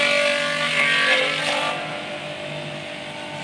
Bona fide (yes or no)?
yes